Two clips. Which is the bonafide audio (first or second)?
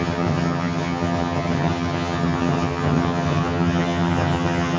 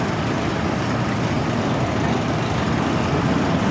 second